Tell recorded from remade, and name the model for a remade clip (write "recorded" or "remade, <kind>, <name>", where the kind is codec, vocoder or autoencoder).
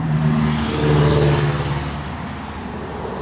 recorded